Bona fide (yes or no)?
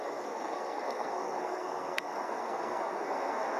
no